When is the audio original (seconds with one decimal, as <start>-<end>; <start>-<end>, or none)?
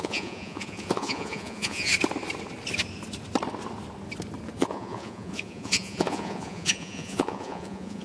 1.9-4.6